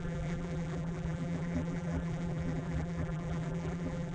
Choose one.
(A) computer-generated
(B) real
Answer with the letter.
A